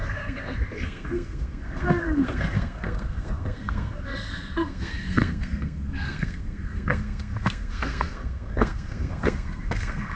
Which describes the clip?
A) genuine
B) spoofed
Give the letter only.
B